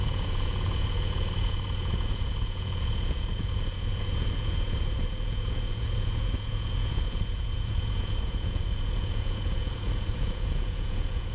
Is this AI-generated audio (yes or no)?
yes